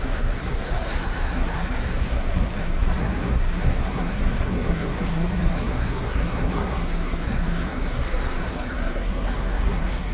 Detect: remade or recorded remade